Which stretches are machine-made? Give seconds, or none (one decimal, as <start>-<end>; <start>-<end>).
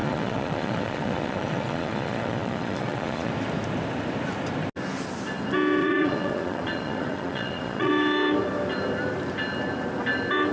0.0-3.3; 5.8-7.9